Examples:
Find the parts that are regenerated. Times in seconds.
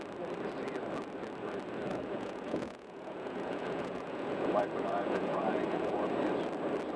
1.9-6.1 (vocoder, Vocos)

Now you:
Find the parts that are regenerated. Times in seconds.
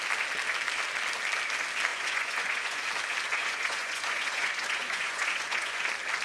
1.9-2.9 (vocoder, Vocos); 3.3-5.8